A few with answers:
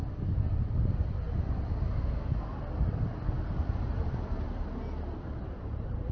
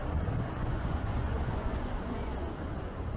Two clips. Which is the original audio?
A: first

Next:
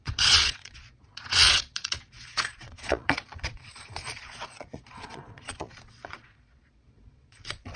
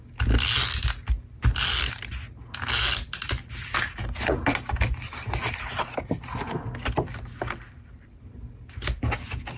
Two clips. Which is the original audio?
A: second